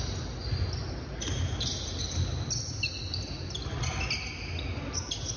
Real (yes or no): yes